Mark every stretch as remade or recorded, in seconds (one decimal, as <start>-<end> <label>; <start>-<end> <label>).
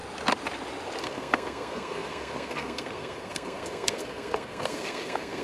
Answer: 0.0-1.0 recorded; 1.0-5.4 remade